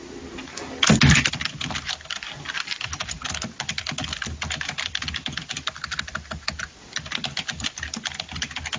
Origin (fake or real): real